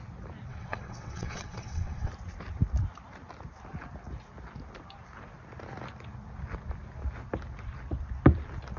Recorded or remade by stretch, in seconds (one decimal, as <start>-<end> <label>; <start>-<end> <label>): 0.0-0.5 recorded; 0.5-2.1 remade; 2.1-8.8 recorded